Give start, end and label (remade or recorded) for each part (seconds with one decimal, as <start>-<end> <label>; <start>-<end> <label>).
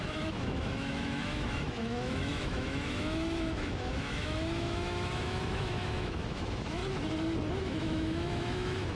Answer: 0.0-6.8 remade; 6.8-7.5 recorded; 7.5-8.9 remade